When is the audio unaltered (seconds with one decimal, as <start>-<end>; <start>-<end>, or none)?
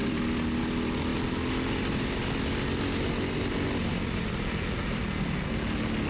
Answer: 0.6-6.1